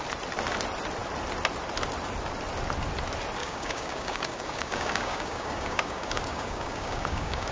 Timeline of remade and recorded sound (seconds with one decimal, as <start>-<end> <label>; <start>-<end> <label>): 0.0-3.4 recorded; 3.4-7.5 remade